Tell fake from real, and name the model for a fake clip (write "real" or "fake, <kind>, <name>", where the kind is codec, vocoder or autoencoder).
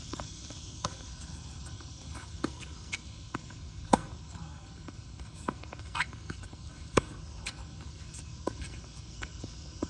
fake, codec, SNAC